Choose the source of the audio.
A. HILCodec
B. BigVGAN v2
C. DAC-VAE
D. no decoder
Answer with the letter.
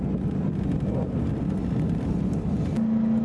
D